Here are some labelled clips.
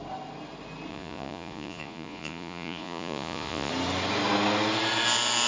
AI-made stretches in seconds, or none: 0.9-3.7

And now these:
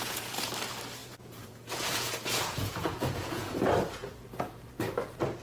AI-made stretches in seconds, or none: 0.0-0.5; 1.0-3.6; 4.0-4.7

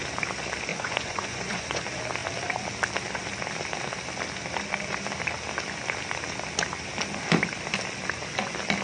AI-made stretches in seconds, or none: 0.7-1.8

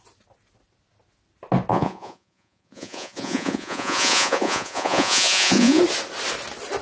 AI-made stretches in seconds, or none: 1.7-5.8

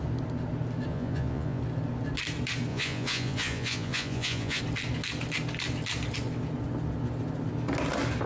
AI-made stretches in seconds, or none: 0.9-1.6; 2.7-4.6